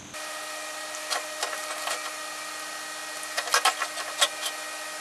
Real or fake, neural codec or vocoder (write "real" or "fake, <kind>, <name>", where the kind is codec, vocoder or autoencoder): real